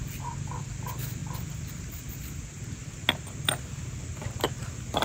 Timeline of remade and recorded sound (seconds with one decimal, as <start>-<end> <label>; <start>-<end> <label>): 0.0-5.0 recorded